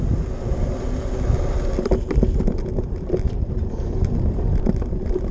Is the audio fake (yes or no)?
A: no